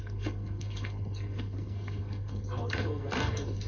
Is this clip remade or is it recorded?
remade